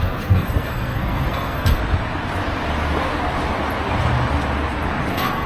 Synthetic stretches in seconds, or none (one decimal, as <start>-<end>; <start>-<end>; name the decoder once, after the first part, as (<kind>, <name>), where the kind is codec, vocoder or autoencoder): 0.0-1.8 (codec, SNAC); 5.1-5.5